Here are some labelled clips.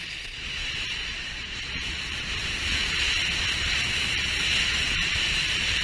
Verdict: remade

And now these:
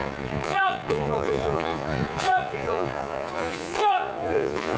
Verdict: remade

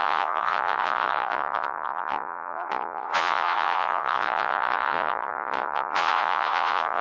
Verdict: remade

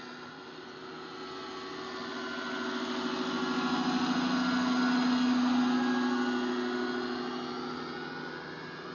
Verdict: recorded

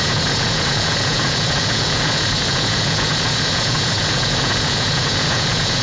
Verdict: remade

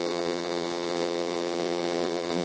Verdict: remade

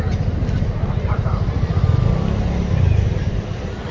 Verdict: recorded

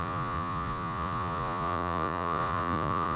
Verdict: remade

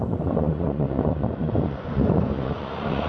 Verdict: remade